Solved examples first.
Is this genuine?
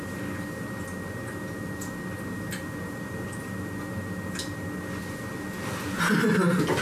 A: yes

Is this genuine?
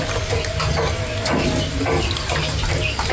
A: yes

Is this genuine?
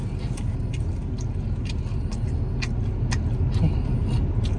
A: yes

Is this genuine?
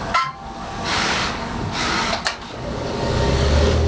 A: no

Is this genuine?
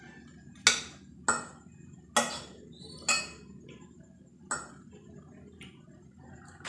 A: yes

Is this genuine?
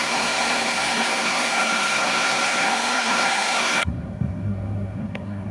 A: no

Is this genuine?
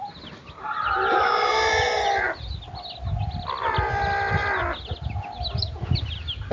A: yes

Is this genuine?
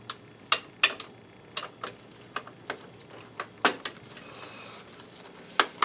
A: yes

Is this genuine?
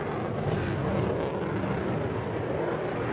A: yes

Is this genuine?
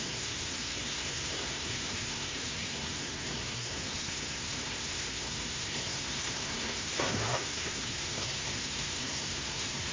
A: no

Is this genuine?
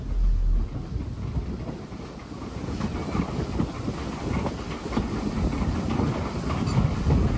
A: yes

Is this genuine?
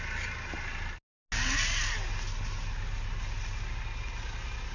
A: yes